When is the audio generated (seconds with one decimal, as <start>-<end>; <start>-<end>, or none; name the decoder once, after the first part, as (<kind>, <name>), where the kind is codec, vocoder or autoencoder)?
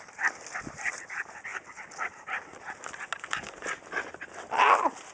none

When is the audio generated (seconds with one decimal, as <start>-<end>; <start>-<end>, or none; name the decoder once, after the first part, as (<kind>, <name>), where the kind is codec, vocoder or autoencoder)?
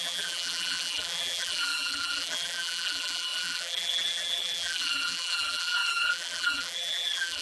0.0-7.4 (vocoder, BigVGAN v2)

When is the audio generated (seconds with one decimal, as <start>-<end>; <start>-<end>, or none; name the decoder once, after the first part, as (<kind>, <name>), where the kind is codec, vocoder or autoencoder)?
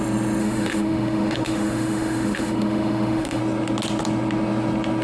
0.4-3.4 (autoencoder, DAC-VAE)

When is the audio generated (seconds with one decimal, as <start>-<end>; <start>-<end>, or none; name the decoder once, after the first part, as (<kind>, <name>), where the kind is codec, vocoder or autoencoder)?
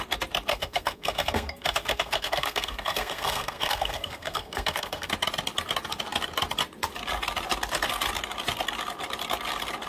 0.5-5.1 (codec, SNAC)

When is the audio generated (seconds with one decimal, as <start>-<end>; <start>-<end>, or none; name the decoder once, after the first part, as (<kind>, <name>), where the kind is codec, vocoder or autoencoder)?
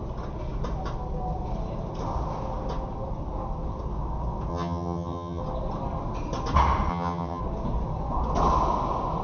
4.5-5.4 (vocoder, HiFi-GAN); 6.9-7.4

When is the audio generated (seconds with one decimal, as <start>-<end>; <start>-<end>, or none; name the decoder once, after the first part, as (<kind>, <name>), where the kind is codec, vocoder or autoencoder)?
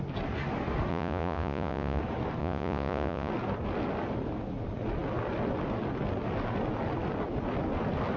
0.9-2.0 (vocoder, Vocos); 2.4-3.3